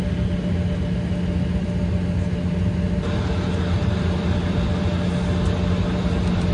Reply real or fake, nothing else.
real